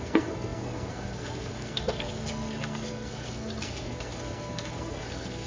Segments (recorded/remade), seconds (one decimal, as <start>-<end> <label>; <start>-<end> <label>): 0.0-5.5 remade